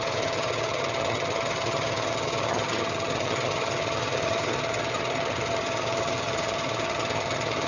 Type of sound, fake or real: fake